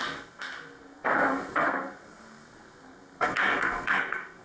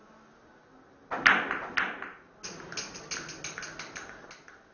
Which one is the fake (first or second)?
first